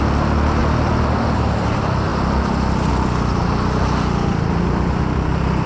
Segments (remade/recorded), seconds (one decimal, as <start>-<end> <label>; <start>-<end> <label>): 0.0-0.6 recorded; 0.6-1.1 remade; 1.1-5.7 recorded